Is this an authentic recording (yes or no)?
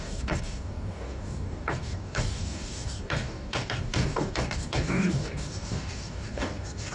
no